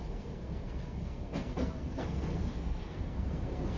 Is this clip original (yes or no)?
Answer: no